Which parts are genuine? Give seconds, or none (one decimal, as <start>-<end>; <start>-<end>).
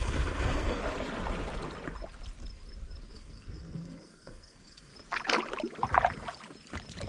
0.8-3.1; 4.9-7.1